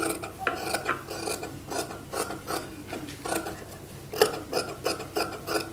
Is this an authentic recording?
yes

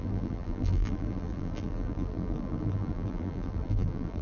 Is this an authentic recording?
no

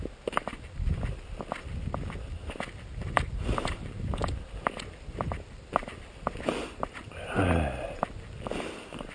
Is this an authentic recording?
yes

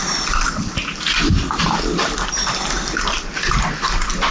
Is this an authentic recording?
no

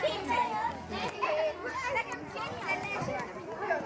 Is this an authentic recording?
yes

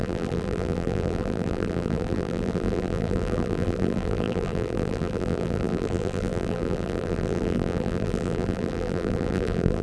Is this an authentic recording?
no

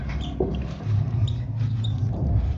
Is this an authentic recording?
no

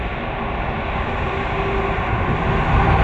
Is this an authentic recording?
yes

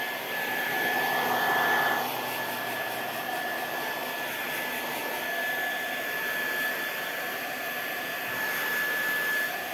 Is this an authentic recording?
no